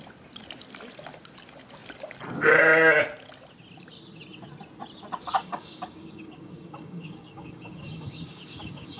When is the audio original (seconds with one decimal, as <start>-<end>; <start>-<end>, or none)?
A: 0.0-5.4